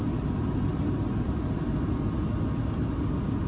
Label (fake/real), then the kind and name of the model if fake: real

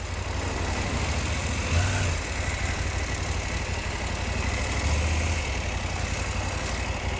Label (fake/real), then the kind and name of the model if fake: real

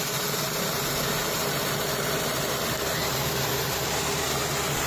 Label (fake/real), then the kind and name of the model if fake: real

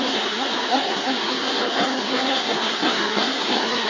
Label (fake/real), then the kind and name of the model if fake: fake, codec, SNAC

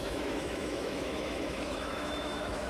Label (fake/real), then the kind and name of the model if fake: fake, autoencoder, DAC-VAE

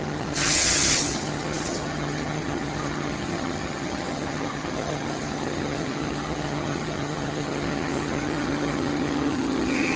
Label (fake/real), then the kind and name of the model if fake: fake, vocoder, HiFi-GAN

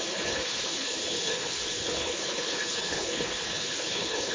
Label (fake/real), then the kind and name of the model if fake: fake, codec, HILCodec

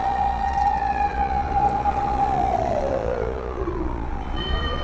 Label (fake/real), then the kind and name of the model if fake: fake, vocoder, Vocos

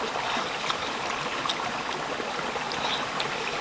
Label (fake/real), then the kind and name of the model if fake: real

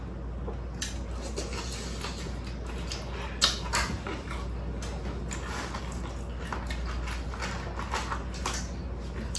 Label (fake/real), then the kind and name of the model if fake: real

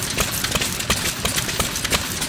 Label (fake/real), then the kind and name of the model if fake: real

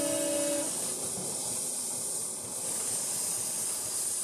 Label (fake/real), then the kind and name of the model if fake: real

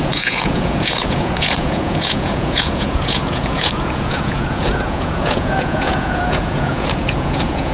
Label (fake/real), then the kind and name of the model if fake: fake, vocoder, Vocos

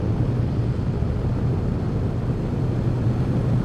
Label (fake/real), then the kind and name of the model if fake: real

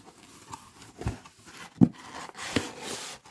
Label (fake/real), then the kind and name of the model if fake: real